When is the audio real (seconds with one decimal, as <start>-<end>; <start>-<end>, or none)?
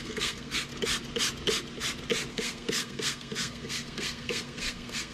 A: 0.7-2.3